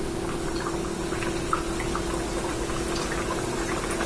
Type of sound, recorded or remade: recorded